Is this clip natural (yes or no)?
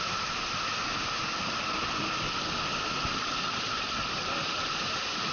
yes